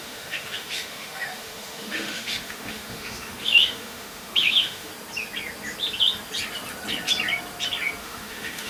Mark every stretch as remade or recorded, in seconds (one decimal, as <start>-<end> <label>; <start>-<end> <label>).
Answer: 0.0-4.9 remade; 4.9-8.0 recorded; 8.0-8.7 remade